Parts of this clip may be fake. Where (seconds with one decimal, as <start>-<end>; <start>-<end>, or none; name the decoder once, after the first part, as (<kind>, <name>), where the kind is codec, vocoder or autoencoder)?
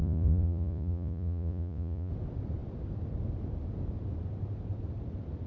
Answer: 0.0-2.1 (vocoder, Vocos)